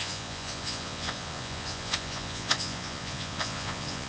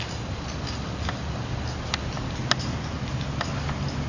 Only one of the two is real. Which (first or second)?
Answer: second